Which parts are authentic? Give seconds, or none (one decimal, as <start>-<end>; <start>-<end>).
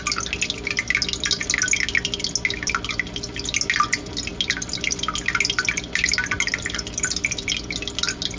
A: 0.0-8.4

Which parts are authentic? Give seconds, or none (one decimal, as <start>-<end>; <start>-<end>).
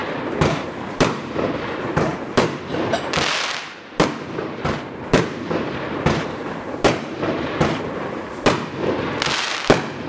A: 2.6-3.7; 8.7-10.1